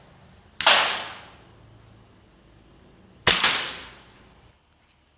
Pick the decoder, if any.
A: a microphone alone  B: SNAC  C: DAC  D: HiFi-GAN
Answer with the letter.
A